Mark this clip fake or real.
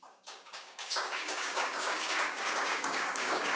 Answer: fake